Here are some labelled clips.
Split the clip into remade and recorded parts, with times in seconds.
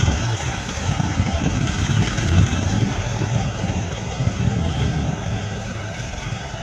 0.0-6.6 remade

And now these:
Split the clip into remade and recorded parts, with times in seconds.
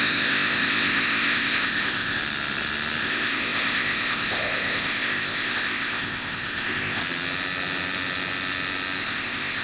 0.0-2.2 remade; 2.2-3.0 recorded; 3.0-7.0 remade; 7.0-9.0 recorded; 9.0-9.6 remade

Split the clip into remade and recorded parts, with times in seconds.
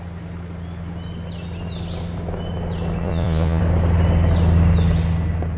0.0-3.0 recorded; 3.0-3.6 remade; 3.6-5.6 recorded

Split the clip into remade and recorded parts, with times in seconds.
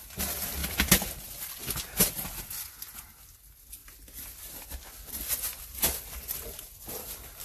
0.0-7.4 recorded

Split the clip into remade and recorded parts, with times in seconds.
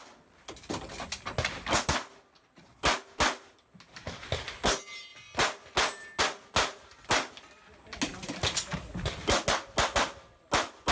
0.0-10.9 recorded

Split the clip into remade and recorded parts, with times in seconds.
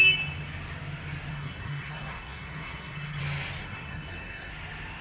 0.0-1.3 recorded; 1.3-3.2 remade; 3.2-3.6 recorded; 3.6-4.5 remade; 4.5-5.0 recorded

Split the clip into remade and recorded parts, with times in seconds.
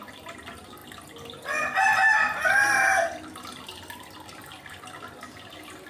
0.0-0.8 remade; 0.8-4.3 recorded; 4.3-5.9 remade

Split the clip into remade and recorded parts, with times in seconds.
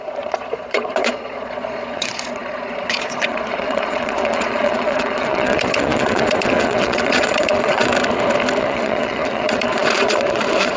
0.0-7.9 remade; 7.9-8.6 recorded; 8.6-10.8 remade